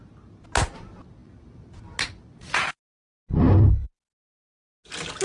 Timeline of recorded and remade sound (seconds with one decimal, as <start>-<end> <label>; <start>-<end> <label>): 0.0-5.2 recorded